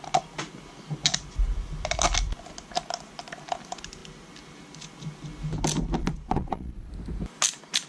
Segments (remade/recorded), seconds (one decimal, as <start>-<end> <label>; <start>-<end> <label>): 0.0-6.0 recorded; 6.0-6.9 remade; 6.9-7.9 recorded